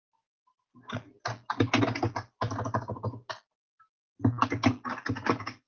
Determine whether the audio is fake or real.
real